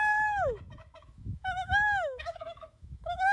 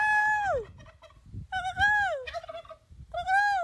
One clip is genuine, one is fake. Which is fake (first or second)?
first